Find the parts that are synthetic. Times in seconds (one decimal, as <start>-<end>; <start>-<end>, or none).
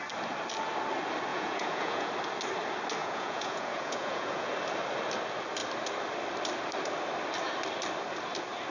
1.3-2.1; 3.0-4.5